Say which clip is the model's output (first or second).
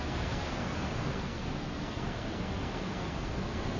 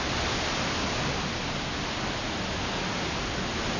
first